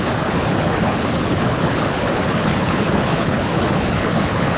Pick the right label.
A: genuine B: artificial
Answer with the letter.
B